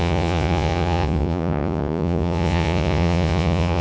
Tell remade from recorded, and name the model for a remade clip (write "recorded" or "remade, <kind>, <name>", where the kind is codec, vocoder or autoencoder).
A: remade, vocoder, Vocos